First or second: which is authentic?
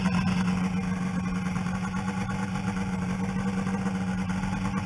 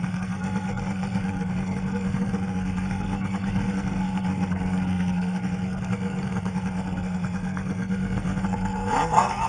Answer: first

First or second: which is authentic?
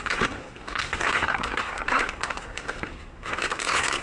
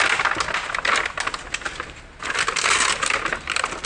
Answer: second